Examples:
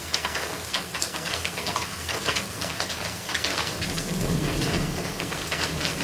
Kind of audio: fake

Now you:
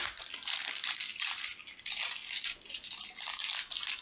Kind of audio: real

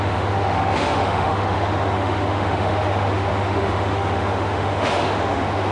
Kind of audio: fake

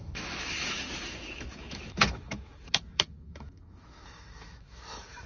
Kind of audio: fake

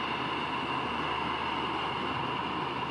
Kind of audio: real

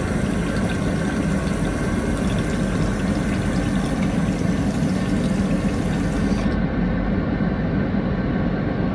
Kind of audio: real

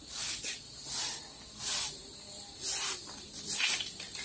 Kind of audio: real